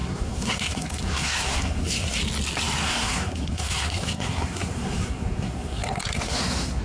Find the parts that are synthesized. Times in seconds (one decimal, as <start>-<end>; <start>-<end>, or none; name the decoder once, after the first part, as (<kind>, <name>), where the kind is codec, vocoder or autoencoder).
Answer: 0.0-2.2 (codec, SNAC); 2.8-6.8